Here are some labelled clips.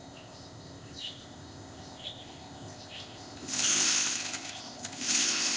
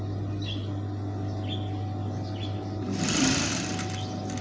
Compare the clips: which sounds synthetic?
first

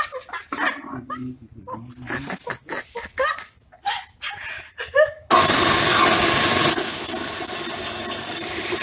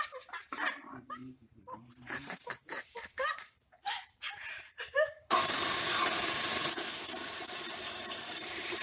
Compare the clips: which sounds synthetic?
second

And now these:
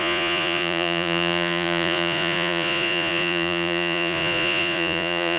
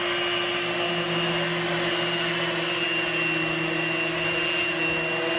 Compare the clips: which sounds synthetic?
first